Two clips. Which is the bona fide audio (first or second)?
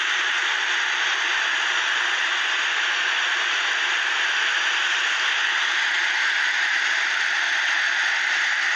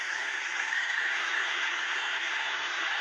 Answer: first